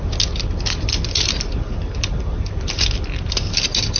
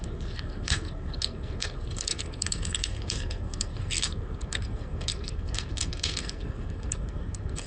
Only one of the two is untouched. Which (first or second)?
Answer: first